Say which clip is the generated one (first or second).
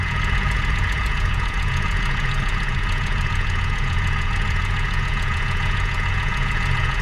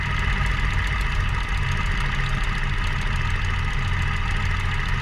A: first